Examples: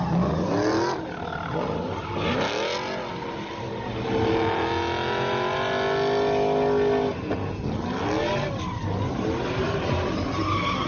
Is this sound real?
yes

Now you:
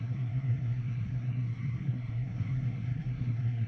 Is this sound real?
no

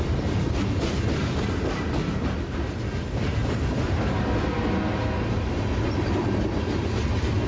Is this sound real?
yes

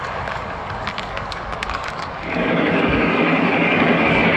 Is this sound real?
no